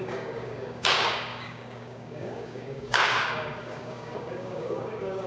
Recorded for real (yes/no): no